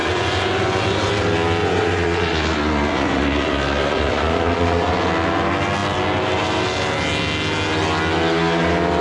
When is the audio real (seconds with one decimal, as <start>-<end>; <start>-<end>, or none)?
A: 1.1-1.6; 4.9-9.0